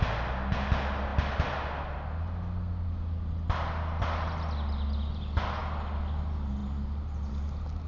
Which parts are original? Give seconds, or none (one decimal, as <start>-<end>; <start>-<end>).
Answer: 0.0-7.9